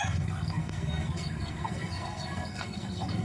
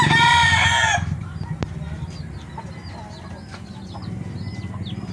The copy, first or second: first